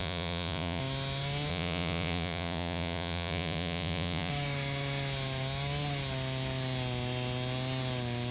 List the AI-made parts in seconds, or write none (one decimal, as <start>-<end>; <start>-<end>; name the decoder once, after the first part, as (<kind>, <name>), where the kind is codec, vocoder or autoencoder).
0.0-0.8 (vocoder, Vocos); 1.5-4.3